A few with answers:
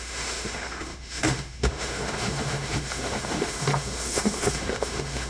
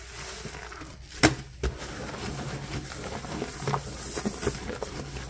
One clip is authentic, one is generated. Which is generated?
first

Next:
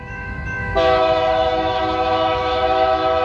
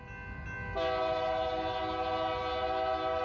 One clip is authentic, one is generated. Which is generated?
first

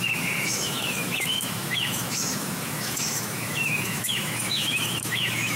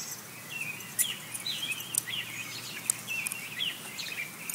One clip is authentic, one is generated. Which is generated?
first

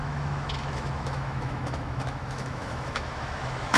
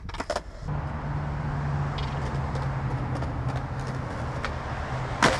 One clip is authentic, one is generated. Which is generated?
first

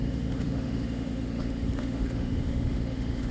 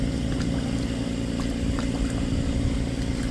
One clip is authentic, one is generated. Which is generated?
first